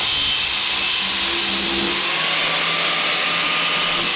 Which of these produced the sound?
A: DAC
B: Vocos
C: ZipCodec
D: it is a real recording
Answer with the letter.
D